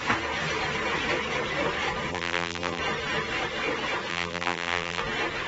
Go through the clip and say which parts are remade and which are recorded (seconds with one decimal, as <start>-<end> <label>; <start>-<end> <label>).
0.0-2.1 recorded; 2.1-2.8 remade; 2.8-4.1 recorded; 4.1-5.0 remade; 5.0-5.5 recorded